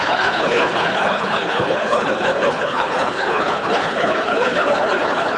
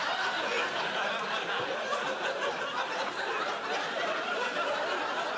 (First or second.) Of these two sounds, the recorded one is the second